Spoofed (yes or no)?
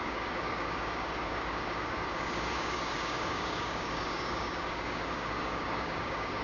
yes